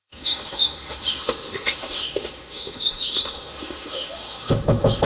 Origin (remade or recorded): remade